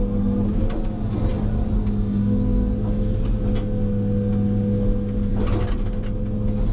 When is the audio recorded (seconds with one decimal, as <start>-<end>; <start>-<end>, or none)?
0.0-6.7